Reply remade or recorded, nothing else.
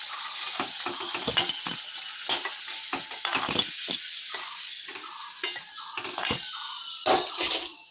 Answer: recorded